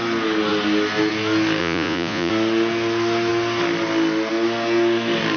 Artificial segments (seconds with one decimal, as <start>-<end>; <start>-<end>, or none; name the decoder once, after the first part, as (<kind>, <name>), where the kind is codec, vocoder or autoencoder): 1.6-2.3 (vocoder, Vocos)